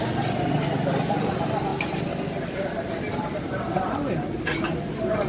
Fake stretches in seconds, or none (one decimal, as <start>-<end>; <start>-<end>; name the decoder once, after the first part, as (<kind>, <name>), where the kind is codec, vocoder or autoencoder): none